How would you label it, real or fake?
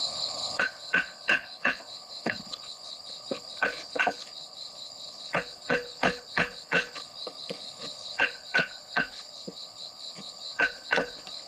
fake